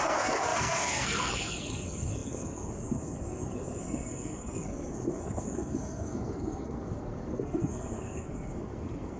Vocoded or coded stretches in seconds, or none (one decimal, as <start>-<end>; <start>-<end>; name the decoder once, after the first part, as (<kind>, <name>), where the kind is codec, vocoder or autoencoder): 0.0-9.2 (codec, SNAC)